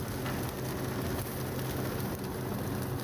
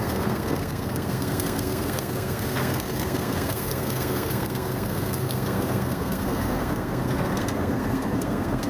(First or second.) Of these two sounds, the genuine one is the first